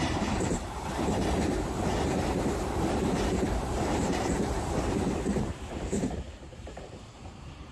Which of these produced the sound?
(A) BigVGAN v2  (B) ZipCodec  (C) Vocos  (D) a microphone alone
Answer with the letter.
A